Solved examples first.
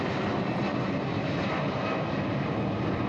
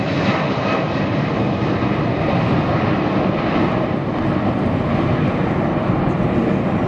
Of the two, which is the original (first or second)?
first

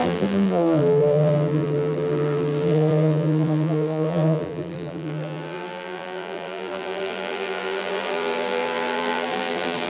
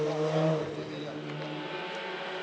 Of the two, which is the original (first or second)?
second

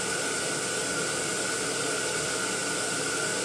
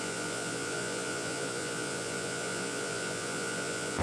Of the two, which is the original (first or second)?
first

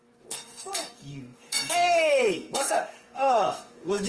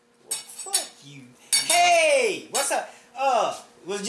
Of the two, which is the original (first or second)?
second